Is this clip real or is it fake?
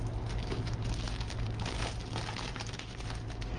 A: real